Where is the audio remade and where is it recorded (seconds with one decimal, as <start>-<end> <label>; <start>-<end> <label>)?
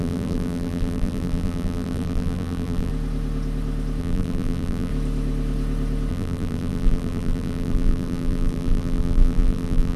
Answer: 0.0-2.9 remade; 2.9-4.0 recorded; 4.0-4.9 remade; 4.9-6.1 recorded; 6.1-10.0 remade